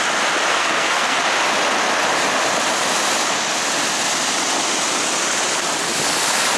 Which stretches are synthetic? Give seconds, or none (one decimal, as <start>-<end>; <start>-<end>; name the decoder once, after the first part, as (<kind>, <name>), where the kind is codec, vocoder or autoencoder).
0.5-1.2 (codec, SNAC)

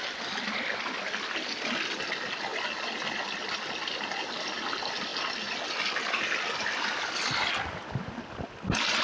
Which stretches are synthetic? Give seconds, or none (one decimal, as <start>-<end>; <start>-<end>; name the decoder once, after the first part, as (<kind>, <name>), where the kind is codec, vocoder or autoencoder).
none

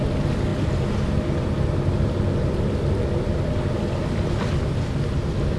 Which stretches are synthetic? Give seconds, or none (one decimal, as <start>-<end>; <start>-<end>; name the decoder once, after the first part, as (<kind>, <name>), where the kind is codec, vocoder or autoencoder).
none

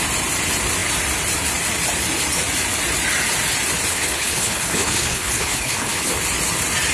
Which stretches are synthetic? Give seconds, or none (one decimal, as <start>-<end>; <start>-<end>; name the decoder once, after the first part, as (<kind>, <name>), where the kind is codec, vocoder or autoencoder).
3.9-6.1 (codec, HILCodec)

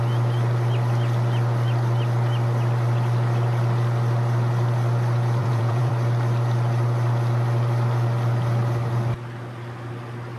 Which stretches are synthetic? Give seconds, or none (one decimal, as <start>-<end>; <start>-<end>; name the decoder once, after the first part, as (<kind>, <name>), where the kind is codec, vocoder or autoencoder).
5.4-5.9 (vocoder, Vocos)

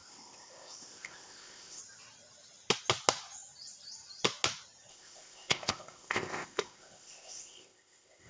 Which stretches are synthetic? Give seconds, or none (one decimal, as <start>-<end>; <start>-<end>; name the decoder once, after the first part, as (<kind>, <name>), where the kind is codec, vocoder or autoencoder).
0.0-1.8 (codec, ZipCodec); 4.9-8.3